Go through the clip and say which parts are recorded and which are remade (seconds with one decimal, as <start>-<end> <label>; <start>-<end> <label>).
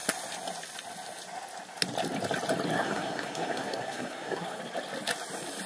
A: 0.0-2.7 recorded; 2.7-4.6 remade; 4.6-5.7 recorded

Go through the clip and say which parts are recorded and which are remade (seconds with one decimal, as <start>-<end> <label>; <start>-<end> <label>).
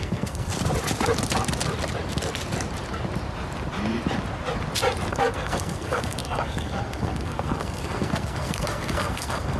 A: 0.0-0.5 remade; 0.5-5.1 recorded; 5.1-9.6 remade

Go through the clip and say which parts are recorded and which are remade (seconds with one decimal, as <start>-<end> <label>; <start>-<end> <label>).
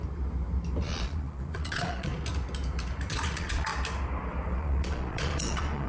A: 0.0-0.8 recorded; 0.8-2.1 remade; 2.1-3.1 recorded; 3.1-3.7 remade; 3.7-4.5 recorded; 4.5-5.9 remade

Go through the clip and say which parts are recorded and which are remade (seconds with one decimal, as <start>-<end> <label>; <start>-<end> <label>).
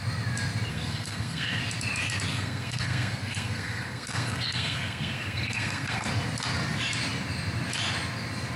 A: 0.0-0.7 recorded; 0.7-1.6 remade; 1.6-2.3 recorded; 2.3-6.1 remade; 6.1-8.6 recorded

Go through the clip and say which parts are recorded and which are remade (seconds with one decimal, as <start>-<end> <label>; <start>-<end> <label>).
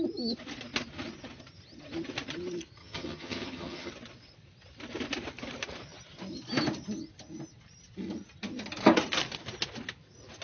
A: 0.0-2.8 recorded; 2.8-3.9 remade; 3.9-10.4 recorded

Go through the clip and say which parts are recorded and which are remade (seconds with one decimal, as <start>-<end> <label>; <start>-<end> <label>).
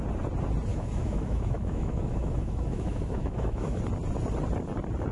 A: 0.0-0.7 recorded; 0.7-3.8 remade; 3.8-5.1 recorded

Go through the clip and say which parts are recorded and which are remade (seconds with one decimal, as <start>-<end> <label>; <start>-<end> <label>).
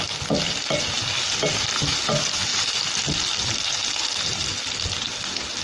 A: 0.0-5.6 recorded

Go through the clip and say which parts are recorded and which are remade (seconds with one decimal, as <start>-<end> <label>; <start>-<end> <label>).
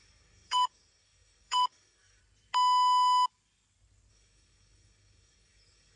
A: 0.0-2.2 remade; 2.2-4.1 recorded; 4.1-6.0 remade